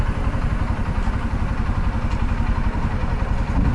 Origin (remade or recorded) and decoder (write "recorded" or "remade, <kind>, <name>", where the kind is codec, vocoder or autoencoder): recorded